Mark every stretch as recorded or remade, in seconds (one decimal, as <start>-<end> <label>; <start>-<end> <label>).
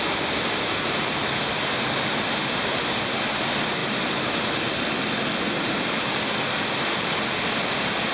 0.0-8.1 recorded